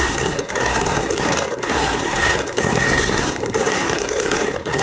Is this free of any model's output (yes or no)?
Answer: no